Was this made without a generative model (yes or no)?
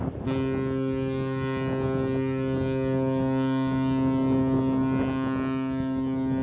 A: yes